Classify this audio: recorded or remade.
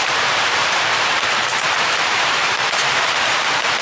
remade